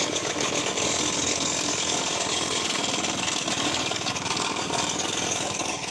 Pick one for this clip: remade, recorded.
remade